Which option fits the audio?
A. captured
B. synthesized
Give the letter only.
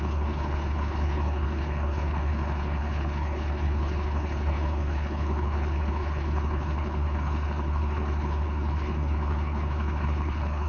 B